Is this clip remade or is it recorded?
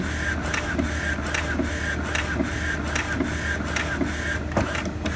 recorded